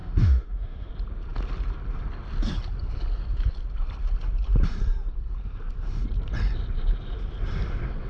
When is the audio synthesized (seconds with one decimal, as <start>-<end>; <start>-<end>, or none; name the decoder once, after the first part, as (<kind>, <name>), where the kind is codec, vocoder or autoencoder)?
0.0-0.9 (autoencoder, DAC-VAE)